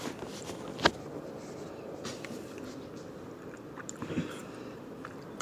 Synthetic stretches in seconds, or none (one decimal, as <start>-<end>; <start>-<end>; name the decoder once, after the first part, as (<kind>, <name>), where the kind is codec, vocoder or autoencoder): none